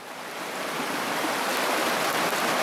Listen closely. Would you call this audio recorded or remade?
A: recorded